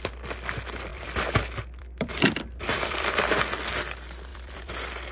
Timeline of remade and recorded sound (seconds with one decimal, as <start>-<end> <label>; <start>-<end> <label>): 0.0-0.9 recorded; 0.9-3.3 remade; 3.3-4.3 recorded; 4.3-5.1 remade